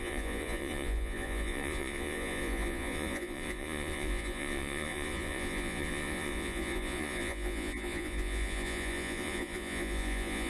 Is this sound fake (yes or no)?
yes